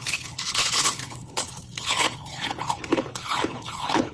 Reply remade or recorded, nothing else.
remade